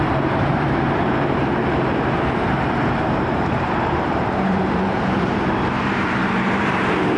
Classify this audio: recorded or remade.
remade